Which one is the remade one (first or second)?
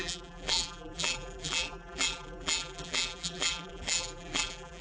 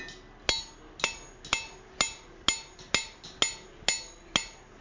first